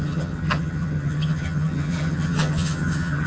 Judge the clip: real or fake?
fake